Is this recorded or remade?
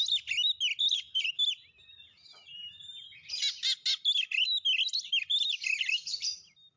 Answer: recorded